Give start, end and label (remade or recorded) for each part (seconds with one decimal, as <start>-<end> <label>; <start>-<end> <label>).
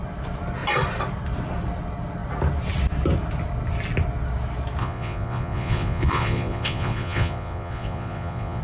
0.0-4.8 recorded; 4.8-8.6 remade